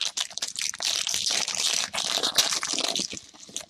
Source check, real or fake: real